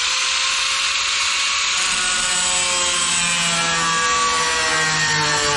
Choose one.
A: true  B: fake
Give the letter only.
A